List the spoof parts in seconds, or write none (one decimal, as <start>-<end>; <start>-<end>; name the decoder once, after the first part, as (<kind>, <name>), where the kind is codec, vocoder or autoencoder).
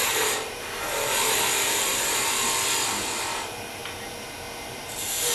0.0-3.8 (vocoder, BigVGAN v2); 4.7-5.3